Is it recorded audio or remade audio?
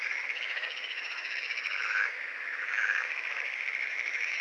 remade